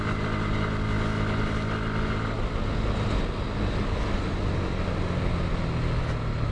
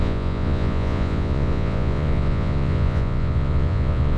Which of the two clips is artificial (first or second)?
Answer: second